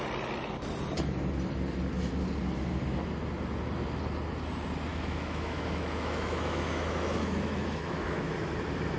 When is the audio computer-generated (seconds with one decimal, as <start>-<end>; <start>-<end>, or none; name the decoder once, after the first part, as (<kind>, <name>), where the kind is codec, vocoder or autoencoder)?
4.9-8.5 (autoencoder, DAC-VAE)